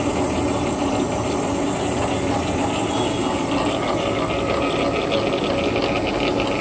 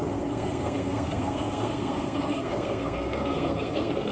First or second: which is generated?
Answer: second